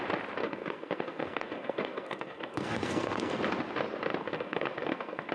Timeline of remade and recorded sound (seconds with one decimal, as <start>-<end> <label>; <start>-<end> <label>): 0.0-0.4 recorded; 0.4-3.4 remade; 3.4-4.2 recorded; 4.2-5.3 remade